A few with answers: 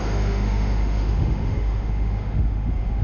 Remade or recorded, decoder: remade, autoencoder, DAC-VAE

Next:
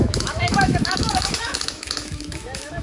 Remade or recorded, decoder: remade, autoencoder, DAC-VAE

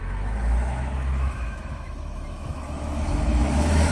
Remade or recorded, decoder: remade, autoencoder, DAC-VAE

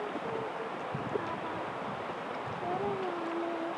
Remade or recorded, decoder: recorded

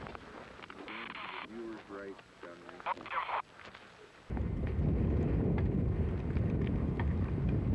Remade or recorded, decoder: recorded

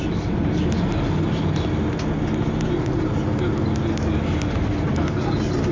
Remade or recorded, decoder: recorded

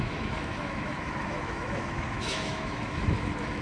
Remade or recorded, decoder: remade, autoencoder, DAC-VAE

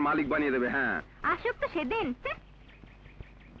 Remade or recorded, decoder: recorded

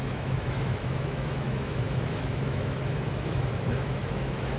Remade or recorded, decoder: remade, autoencoder, DAC-VAE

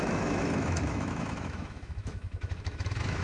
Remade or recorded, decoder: remade, autoencoder, DAC-VAE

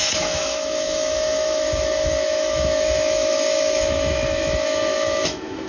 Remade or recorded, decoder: remade, autoencoder, DAC-VAE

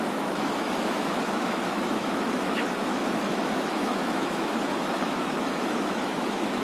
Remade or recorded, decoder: remade, autoencoder, DAC-VAE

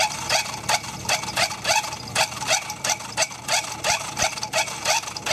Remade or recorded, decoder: recorded